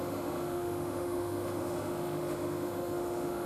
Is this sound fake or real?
fake